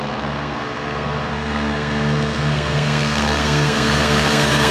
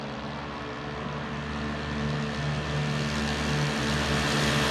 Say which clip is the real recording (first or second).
second